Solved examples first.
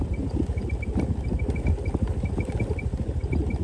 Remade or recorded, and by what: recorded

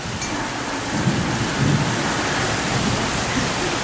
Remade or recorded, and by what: recorded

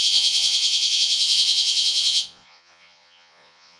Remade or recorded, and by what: remade, vocoder, Vocos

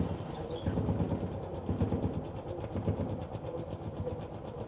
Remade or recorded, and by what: recorded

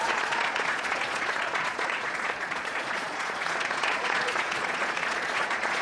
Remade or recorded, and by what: remade, vocoder, Vocos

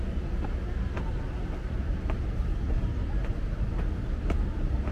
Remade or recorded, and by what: recorded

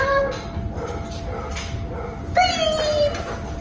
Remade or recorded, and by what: recorded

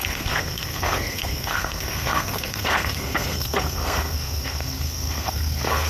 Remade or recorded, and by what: remade, codec, SNAC